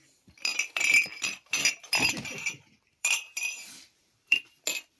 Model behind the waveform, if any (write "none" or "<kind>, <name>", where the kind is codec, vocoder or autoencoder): vocoder, BigVGAN v2